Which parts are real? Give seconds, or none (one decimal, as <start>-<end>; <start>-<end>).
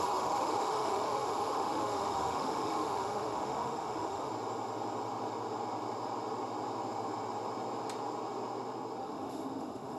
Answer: 4.3-9.0